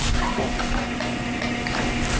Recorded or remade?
recorded